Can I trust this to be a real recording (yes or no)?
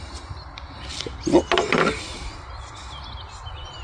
yes